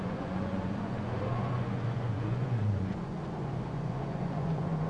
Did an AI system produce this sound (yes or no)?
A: yes